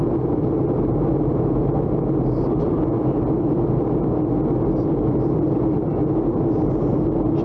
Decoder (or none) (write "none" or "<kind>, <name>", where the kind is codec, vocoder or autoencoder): none